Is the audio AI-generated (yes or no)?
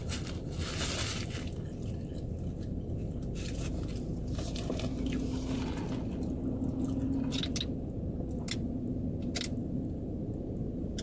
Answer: no